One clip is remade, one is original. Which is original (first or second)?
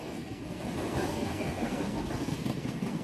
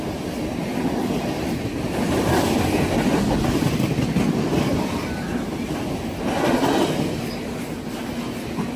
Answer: second